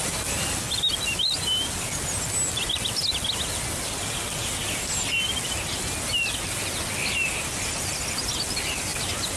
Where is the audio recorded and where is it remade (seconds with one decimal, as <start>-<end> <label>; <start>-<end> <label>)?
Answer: 0.0-9.4 recorded